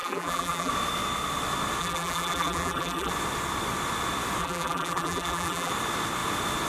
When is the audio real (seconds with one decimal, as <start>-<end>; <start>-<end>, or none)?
0.7-1.8; 3.1-4.4; 5.7-6.7